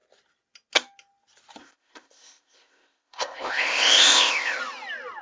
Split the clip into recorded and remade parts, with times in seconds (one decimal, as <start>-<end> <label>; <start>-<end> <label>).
0.0-1.6 recorded; 1.6-4.6 remade; 4.6-5.2 recorded